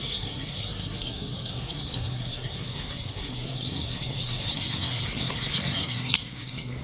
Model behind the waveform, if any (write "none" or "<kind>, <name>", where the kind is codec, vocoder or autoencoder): codec, SNAC